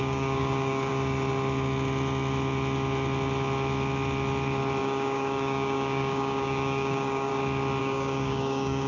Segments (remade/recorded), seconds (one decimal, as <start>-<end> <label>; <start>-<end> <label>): 0.0-0.9 remade; 0.9-4.8 recorded; 4.8-7.3 remade; 7.3-7.8 recorded; 7.8-8.9 remade